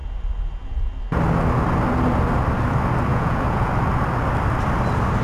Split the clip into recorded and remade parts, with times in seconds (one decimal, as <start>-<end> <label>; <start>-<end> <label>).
0.0-3.1 recorded; 3.1-3.7 remade; 3.7-5.2 recorded